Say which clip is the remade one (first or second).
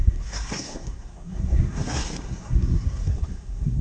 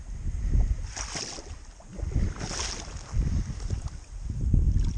first